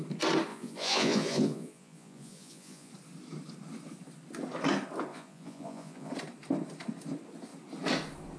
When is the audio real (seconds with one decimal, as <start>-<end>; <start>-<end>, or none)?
0.0-0.5; 2.9-5.1; 6.1-8.4